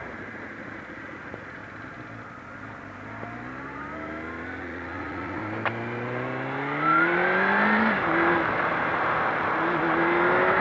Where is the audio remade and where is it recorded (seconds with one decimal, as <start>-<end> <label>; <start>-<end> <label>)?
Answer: 0.0-1.6 remade; 1.6-4.6 recorded; 4.6-5.4 remade; 5.4-10.6 recorded